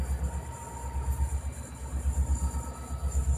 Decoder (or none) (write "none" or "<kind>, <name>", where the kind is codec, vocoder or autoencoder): none